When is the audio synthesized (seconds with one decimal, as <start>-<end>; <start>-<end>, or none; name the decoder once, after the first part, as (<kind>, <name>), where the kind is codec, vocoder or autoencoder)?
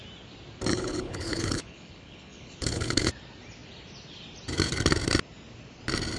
0.7-3.1 (codec, HILCodec)